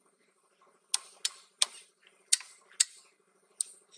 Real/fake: real